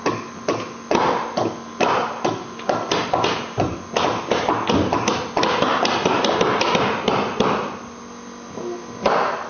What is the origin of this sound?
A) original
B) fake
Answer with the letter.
A